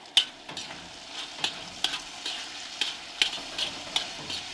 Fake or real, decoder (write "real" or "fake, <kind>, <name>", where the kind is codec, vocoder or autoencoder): real